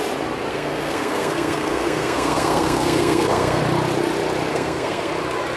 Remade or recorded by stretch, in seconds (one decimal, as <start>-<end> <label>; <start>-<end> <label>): 0.0-0.5 recorded; 0.5-3.6 remade; 3.6-4.5 recorded; 4.5-5.1 remade; 5.1-5.6 recorded